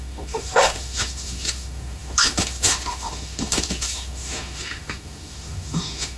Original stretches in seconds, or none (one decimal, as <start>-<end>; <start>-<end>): none